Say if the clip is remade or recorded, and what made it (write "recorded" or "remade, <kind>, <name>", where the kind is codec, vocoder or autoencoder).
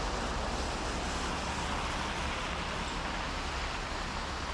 recorded